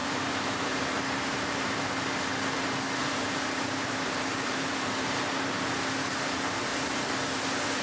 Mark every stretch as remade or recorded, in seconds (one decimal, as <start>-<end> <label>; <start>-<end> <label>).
0.0-1.9 remade; 1.9-3.0 recorded; 3.0-5.7 remade; 5.7-7.8 recorded